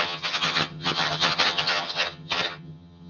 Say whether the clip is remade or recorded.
remade